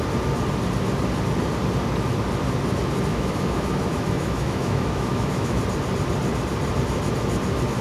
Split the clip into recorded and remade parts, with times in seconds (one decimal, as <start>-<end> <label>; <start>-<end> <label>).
0.0-3.1 recorded; 3.1-5.6 remade; 5.6-7.8 recorded